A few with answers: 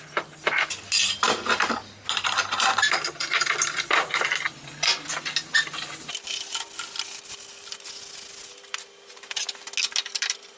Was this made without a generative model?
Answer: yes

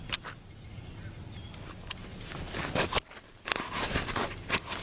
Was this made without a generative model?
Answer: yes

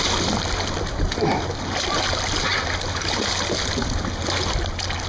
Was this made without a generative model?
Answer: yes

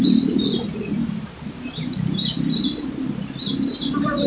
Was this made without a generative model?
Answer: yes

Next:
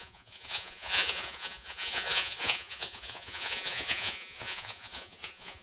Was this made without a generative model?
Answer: no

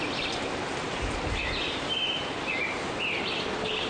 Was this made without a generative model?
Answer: yes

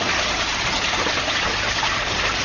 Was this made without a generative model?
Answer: yes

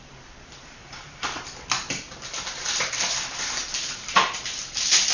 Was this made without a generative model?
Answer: no